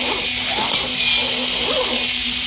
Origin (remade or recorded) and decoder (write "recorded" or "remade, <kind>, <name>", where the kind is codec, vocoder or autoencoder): recorded